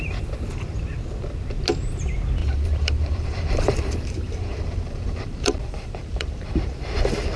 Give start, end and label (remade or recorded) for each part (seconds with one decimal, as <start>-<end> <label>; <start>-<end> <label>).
0.0-2.4 recorded; 2.4-6.7 remade; 6.7-7.4 recorded